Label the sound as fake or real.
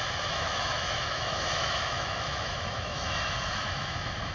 fake